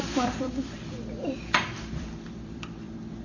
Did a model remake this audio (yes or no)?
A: yes